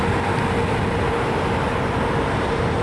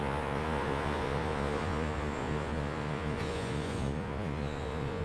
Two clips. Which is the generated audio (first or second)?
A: second